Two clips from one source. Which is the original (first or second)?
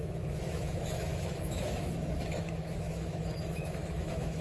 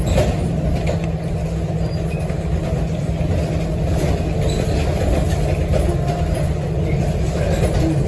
second